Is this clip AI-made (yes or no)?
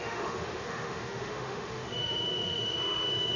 yes